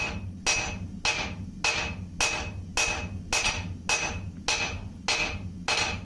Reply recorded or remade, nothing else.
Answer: recorded